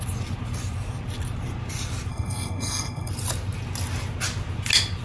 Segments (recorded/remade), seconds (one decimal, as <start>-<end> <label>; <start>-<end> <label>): 0.0-2.1 recorded; 2.1-3.1 remade; 3.1-5.0 recorded